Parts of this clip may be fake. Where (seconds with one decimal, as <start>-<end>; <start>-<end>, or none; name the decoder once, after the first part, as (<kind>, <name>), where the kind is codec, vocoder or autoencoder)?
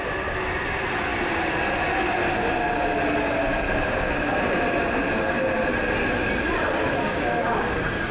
7.0-8.1 (codec, DAC)